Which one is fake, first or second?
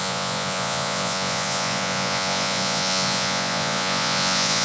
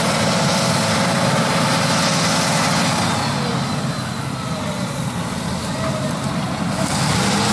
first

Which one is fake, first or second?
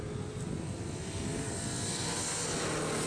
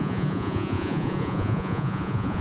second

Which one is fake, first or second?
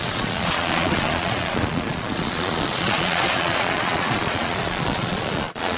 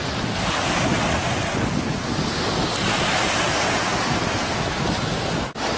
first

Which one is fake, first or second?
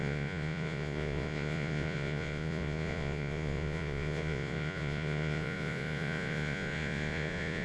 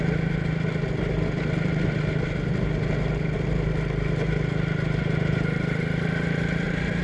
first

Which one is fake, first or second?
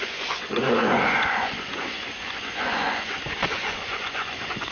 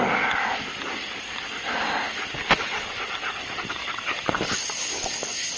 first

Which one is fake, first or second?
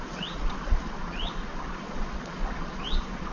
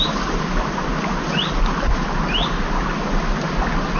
first